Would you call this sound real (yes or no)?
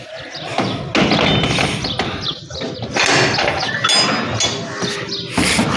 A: yes